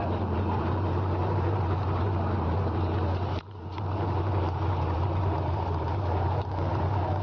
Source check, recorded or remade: remade